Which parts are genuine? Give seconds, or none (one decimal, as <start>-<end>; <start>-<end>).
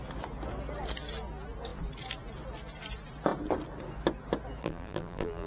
0.0-4.6